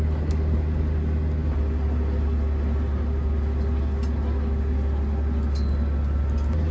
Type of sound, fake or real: real